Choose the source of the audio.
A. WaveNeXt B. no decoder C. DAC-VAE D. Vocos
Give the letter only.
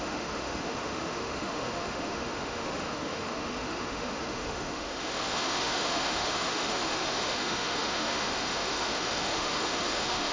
C